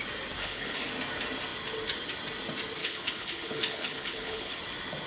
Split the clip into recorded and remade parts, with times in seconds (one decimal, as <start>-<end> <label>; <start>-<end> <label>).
0.0-0.4 recorded; 0.4-0.9 remade; 0.9-2.8 recorded; 2.8-4.6 remade; 4.6-5.1 recorded